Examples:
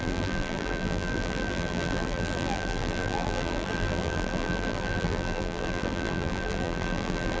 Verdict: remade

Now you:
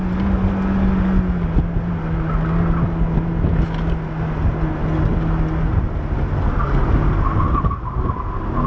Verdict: recorded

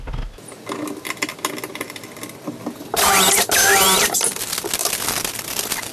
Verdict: recorded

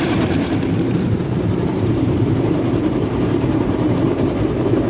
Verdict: remade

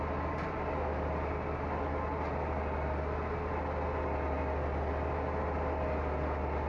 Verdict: recorded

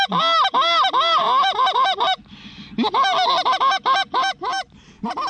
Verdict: recorded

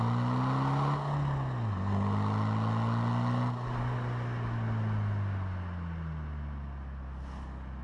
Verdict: recorded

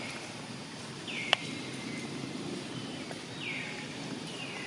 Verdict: remade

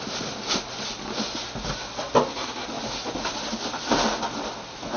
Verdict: recorded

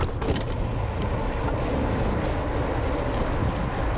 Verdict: recorded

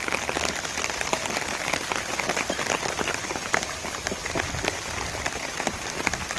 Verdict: remade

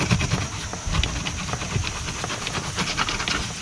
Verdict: recorded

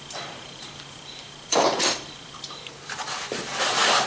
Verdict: remade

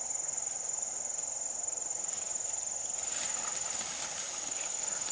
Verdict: remade